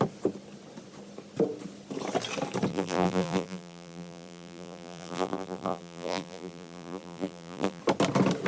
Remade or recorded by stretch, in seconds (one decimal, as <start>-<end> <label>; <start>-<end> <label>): 0.0-2.7 recorded; 2.7-7.8 remade; 7.8-8.5 recorded